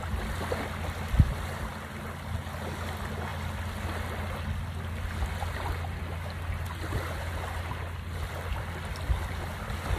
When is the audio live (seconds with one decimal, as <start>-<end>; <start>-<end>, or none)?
0.0-10.0